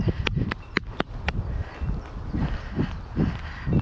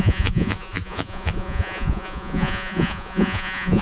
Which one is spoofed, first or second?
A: second